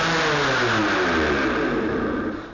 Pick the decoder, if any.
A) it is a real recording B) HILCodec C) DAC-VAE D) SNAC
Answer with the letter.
A